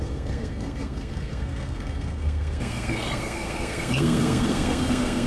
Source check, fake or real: fake